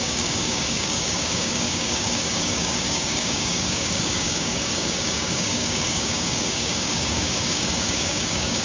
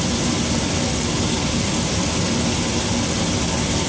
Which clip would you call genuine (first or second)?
second